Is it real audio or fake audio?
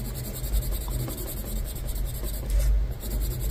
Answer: real